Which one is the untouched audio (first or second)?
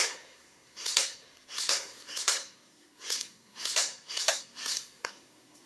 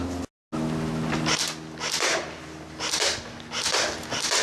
second